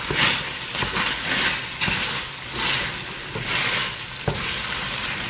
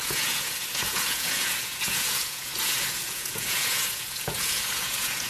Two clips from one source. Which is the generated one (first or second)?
second